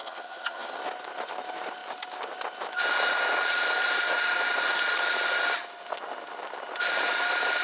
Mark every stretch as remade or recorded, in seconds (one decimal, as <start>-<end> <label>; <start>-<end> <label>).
0.0-0.8 remade; 0.8-7.6 recorded